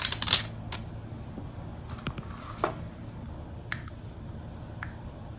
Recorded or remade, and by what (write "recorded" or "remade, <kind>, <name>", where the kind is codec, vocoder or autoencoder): recorded